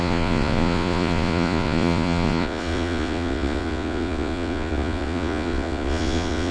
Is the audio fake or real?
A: fake